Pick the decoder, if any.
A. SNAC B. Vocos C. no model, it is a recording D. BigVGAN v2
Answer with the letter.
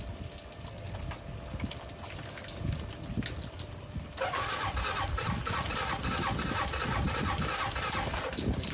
D